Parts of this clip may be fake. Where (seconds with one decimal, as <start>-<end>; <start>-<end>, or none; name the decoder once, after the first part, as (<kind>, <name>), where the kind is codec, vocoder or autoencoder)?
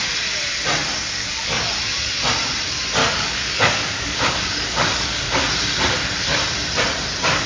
1.2-1.7 (codec, DAC); 3.0-5.4